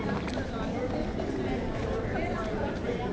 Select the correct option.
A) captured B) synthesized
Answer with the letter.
A